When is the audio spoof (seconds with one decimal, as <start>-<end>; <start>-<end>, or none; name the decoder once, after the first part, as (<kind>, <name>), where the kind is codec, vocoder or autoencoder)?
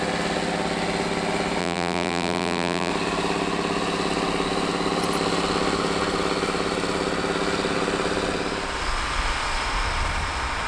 1.6-2.9 (vocoder, BigVGAN v2)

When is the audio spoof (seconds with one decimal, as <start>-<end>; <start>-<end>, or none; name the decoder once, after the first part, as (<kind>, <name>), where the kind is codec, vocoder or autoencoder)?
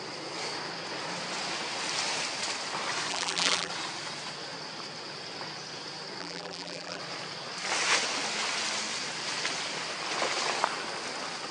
3.1-3.7 (vocoder, BigVGAN v2); 6.2-7.0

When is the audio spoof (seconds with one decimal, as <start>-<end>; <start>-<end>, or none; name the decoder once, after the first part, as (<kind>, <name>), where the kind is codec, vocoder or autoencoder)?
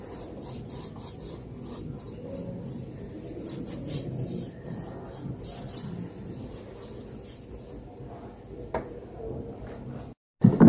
none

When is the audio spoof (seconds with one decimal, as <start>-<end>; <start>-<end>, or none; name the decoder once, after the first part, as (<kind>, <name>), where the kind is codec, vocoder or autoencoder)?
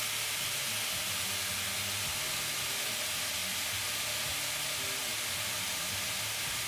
3.4-3.9 (vocoder, BigVGAN v2); 5.1-6.7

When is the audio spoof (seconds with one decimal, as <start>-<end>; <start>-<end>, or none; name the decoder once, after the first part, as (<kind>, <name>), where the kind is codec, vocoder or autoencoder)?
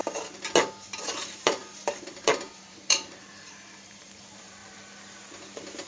1.0-4.6 (vocoder, BigVGAN v2)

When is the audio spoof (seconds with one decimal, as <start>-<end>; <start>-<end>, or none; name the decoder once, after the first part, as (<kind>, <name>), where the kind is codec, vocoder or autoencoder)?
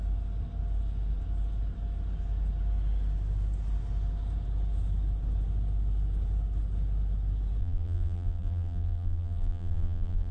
7.6-10.3 (vocoder, BigVGAN v2)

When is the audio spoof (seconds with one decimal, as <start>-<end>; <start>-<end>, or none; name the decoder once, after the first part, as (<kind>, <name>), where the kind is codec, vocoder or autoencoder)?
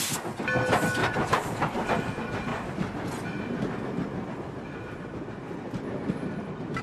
1.0-1.9 (vocoder, BigVGAN v2)